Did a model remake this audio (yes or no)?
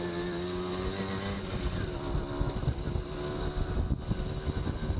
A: no